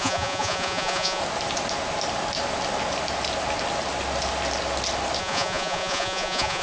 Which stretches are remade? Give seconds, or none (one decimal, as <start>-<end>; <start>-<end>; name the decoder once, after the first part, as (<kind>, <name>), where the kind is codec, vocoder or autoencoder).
0.0-1.2 (vocoder, Vocos); 5.2-6.6